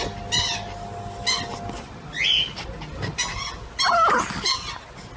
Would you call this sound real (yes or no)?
yes